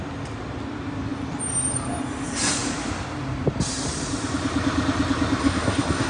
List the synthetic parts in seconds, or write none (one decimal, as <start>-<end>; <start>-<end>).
5.4-6.1